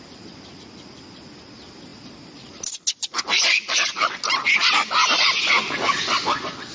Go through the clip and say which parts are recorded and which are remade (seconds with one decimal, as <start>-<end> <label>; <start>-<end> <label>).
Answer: 0.0-1.9 recorded; 1.9-2.8 remade; 2.8-6.7 recorded